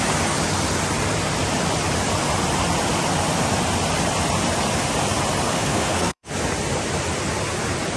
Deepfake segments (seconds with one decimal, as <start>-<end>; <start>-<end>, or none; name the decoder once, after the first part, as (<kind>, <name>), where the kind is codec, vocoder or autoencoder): 5.5-6.3 (codec, SNAC)